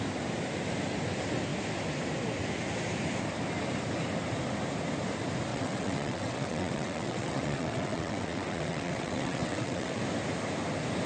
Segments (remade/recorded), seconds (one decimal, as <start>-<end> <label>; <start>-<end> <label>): 0.0-5.5 recorded; 5.5-10.0 remade; 10.0-11.1 recorded